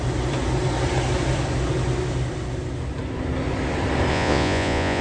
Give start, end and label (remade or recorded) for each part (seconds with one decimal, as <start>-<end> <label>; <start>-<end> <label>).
0.0-4.1 recorded; 4.1-5.0 remade